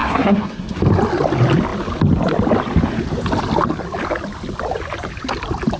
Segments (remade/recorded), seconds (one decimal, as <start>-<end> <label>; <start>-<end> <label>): 0.0-0.8 remade; 0.8-5.8 recorded